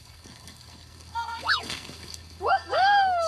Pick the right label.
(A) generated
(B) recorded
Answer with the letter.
A